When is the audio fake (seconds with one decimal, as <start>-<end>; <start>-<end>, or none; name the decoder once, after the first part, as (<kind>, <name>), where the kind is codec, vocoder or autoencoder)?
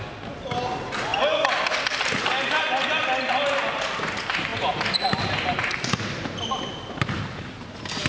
none